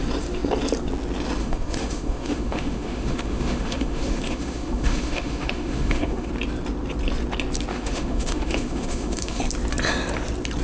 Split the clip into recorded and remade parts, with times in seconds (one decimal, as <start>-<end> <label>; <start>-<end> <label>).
0.0-1.4 recorded; 1.4-6.3 remade; 6.3-7.7 recorded; 7.7-9.4 remade; 9.4-10.6 recorded